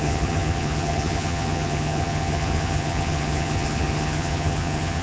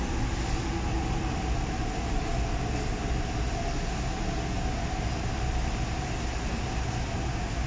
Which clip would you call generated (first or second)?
first